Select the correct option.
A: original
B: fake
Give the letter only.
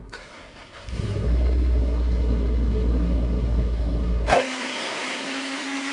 B